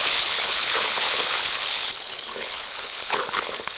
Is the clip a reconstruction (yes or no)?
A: yes